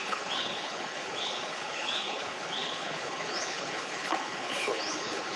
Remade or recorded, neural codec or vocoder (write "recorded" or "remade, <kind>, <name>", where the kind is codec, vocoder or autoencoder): remade, codec, HILCodec